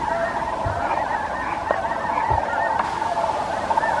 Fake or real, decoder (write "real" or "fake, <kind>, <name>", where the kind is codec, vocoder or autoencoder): real